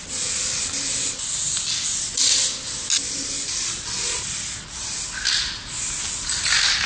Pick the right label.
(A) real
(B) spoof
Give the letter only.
A